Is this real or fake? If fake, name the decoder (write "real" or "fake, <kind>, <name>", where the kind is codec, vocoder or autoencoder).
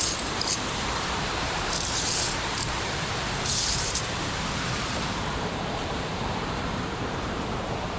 fake, vocoder, BigVGAN v2